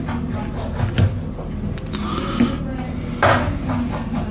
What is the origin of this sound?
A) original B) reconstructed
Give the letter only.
A